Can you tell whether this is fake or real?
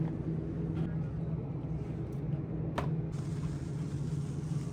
real